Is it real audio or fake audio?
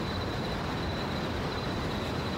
real